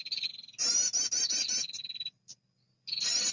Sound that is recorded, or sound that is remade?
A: recorded